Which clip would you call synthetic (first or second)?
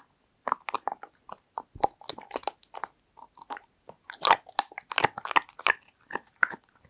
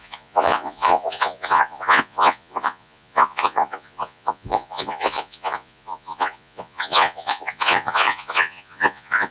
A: second